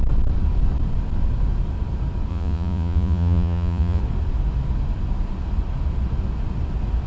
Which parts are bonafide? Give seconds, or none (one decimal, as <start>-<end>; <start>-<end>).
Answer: 0.0-2.3; 4.0-7.1